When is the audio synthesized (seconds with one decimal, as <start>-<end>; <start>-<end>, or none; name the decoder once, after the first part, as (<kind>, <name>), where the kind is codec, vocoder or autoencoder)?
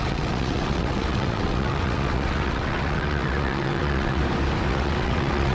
0.0-4.2 (vocoder, WaveNeXt); 4.7-5.5